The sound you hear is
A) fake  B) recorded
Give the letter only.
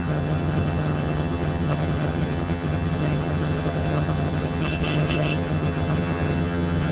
A